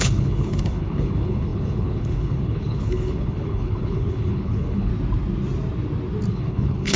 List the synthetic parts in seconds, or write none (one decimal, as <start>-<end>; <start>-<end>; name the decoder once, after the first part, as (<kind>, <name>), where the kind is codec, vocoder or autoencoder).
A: 0.0-4.9 (codec, HILCodec); 6.3-7.0